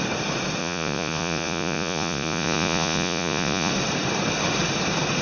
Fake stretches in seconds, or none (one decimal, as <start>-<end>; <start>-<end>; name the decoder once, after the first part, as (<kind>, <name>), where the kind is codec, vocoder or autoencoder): 0.6-3.7 (vocoder, Vocos)